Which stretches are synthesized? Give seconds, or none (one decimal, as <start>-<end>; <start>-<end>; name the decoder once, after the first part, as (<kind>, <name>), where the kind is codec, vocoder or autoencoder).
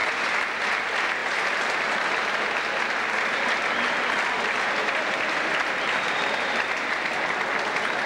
none